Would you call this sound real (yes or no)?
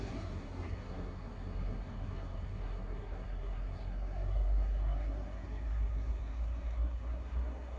no